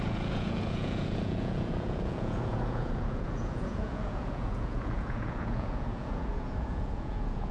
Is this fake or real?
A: fake